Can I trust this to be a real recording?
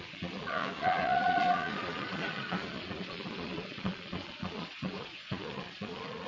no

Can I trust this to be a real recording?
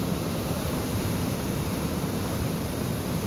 no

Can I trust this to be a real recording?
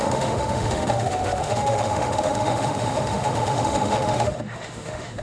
no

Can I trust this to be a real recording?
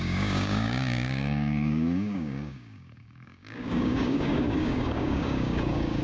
no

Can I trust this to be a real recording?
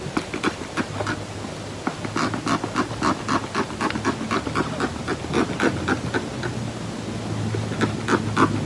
yes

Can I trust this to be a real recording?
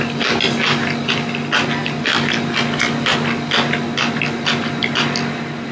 yes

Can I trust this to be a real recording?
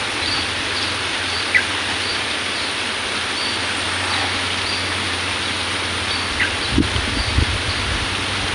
yes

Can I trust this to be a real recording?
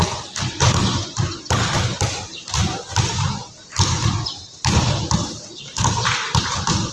yes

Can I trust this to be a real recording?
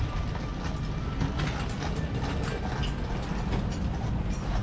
yes